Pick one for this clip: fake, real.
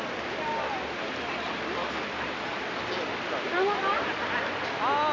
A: real